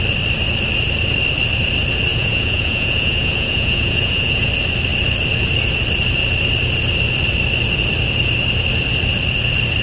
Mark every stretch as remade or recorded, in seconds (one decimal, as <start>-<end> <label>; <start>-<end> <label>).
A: 0.0-2.1 recorded; 2.1-4.5 remade; 4.5-9.8 recorded